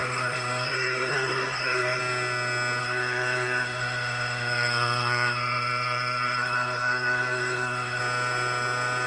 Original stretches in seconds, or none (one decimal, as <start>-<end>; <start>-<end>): 2.0-2.8; 8.0-9.1